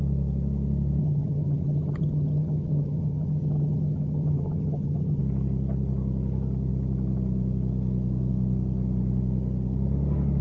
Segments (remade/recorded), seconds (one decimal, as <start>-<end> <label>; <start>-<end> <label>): 0.0-1.0 recorded; 1.0-5.2 remade; 5.2-10.4 recorded